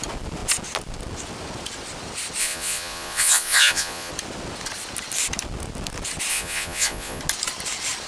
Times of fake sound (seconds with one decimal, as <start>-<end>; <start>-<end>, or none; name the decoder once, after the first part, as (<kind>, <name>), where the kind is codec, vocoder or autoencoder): 2.4-4.1 (vocoder, Vocos); 6.3-7.2